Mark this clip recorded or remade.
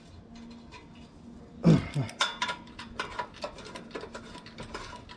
recorded